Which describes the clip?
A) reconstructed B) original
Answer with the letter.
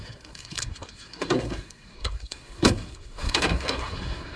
A